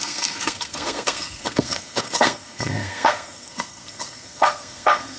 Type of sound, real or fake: fake